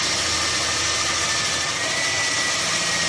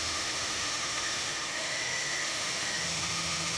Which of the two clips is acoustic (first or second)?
first